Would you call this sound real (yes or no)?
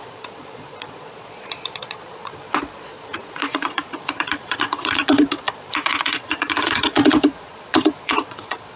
no